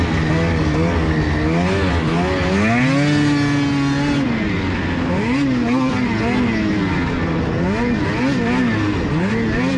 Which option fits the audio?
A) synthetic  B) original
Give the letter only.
B